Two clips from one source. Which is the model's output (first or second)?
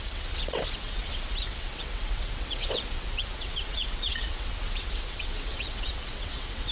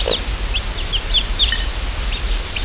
first